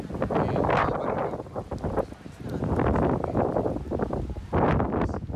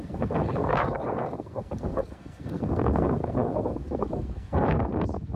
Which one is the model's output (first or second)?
second